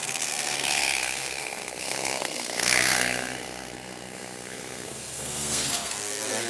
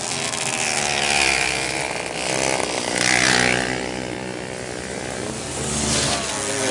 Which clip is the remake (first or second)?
first